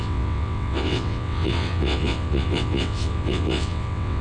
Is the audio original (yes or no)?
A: no